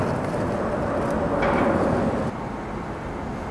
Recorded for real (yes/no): yes